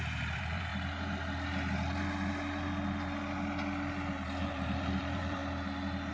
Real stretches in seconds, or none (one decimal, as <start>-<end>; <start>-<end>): 0.7-4.4; 5.4-6.1